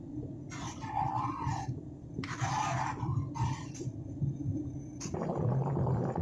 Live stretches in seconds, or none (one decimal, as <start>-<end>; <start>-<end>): 3.1-3.7